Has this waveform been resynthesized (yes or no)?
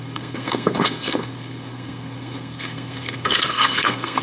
yes